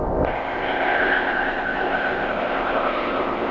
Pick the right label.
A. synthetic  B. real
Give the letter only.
A